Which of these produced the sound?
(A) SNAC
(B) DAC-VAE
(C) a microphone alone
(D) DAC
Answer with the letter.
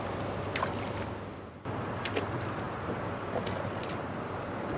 C